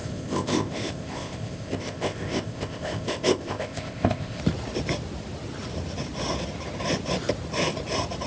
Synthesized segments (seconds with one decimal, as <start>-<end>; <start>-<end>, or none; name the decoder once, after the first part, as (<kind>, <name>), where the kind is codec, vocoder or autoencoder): 0.0-4.4 (codec, ZipCodec)